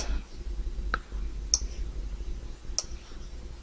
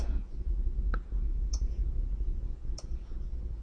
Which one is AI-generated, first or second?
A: second